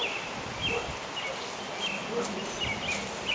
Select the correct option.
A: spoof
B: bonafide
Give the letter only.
B